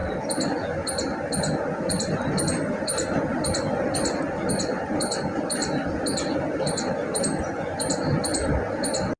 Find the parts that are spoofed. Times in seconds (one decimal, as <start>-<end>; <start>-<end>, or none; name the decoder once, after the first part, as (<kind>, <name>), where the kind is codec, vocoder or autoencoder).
none